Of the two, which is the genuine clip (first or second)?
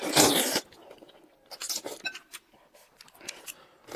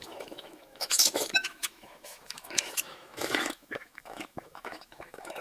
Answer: first